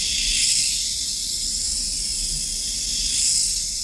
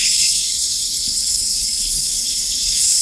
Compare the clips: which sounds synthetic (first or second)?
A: second